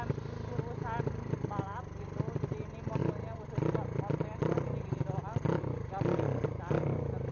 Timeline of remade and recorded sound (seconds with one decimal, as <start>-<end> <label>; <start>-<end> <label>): 0.0-7.3 recorded